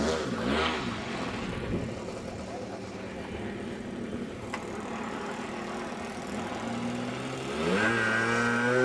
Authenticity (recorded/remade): recorded